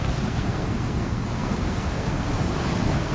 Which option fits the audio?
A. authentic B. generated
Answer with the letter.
B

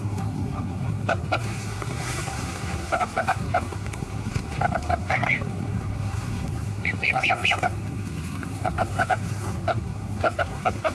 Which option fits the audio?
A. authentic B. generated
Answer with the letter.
B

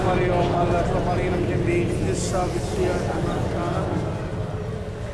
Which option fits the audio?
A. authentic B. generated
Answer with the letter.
A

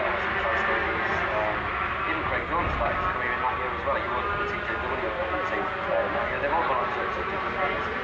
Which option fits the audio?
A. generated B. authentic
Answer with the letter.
B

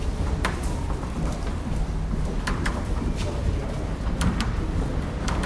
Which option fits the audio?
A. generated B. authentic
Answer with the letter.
B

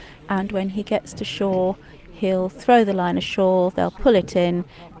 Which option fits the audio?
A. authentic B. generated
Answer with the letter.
A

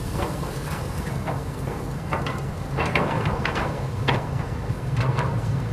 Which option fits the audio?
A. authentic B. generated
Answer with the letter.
B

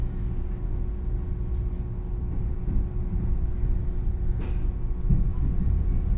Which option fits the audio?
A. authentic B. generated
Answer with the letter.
A